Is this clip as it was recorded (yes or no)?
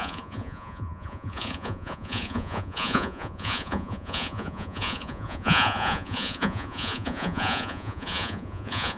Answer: no